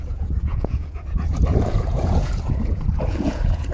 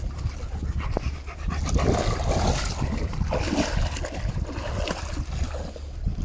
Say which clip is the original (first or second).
second